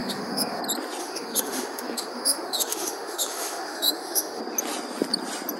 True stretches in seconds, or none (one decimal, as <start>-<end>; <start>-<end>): 0.6-1.0; 4.4-5.6